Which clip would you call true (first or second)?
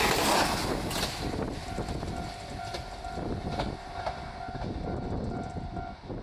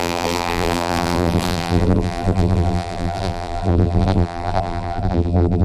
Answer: first